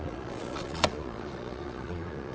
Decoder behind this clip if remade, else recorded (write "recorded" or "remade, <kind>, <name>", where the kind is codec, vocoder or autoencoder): remade, vocoder, Vocos